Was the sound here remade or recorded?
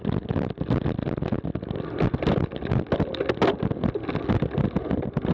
recorded